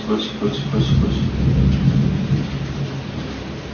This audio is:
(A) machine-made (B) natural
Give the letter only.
B